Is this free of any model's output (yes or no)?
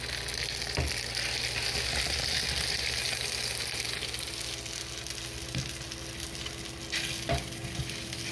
yes